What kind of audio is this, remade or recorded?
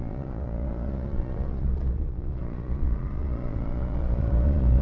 remade